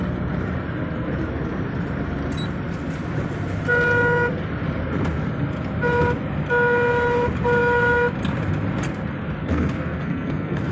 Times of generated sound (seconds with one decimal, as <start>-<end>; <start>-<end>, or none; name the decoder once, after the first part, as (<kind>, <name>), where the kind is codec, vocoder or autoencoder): 9.4-10.7 (codec, SNAC)